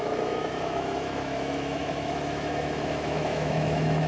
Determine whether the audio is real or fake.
fake